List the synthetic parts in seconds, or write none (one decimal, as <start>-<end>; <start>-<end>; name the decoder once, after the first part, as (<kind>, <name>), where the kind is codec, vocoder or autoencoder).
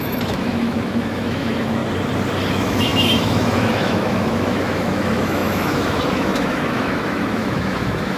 0.0-1.8 (autoencoder, DAC-VAE); 2.5-8.2